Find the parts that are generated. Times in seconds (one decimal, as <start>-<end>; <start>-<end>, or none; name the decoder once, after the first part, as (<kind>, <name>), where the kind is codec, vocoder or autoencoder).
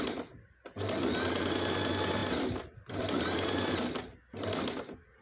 none